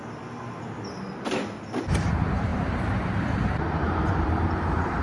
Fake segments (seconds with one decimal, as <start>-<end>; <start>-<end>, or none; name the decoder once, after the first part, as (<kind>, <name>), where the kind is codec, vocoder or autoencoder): 1.9-5.0 (vocoder, BigVGAN v2)